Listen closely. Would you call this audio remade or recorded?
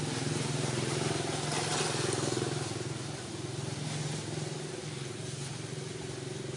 recorded